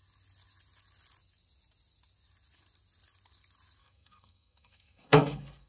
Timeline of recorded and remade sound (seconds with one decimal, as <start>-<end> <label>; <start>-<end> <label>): 0.0-3.8 recorded; 3.8-5.7 remade

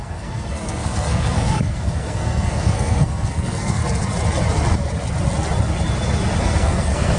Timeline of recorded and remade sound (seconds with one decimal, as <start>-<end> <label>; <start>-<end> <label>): 0.0-3.8 remade; 3.8-6.4 recorded; 6.4-7.2 remade

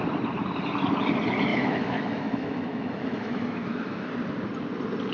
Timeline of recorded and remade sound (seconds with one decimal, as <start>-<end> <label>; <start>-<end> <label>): 0.0-1.5 recorded; 1.5-4.1 remade; 4.1-5.1 recorded

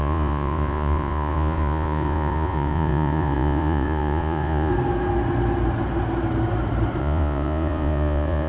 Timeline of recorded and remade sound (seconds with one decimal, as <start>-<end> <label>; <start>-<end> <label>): 0.0-4.7 remade; 4.7-7.0 recorded; 7.0-8.5 remade

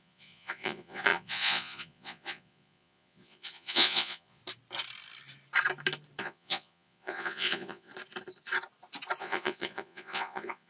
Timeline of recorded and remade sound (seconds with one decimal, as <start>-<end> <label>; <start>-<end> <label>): 0.0-4.4 remade; 4.4-6.2 recorded; 6.2-7.9 remade; 7.9-9.2 recorded; 9.2-10.7 remade